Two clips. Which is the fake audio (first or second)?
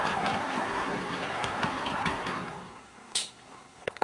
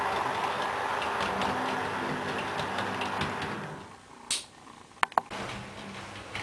first